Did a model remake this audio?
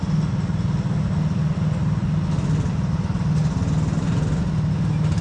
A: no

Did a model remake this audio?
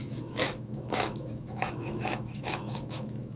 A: yes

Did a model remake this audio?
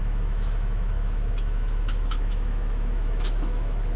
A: yes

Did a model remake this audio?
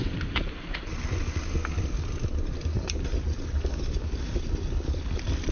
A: yes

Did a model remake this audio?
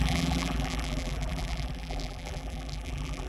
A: yes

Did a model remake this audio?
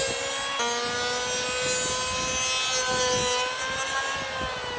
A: no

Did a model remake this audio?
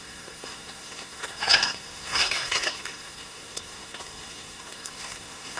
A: yes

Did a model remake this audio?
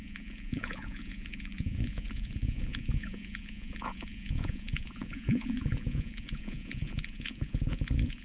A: yes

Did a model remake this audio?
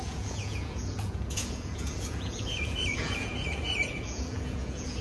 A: yes